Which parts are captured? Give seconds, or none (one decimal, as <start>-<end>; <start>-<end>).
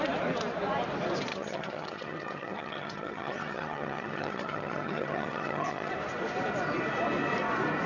0.0-1.3; 5.9-7.9